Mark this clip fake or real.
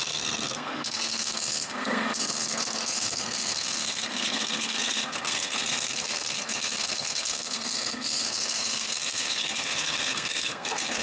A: fake